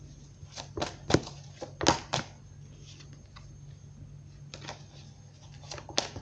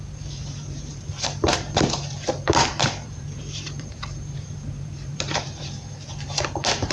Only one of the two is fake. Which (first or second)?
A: second